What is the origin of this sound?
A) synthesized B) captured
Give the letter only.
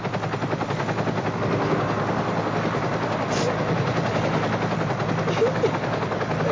B